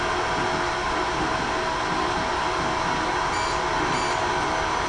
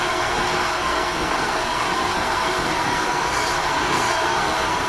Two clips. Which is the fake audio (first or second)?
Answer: second